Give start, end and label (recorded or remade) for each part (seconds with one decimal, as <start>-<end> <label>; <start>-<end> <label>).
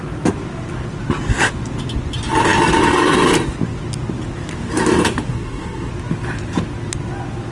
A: 0.0-5.3 recorded; 5.3-5.9 remade; 5.9-7.5 recorded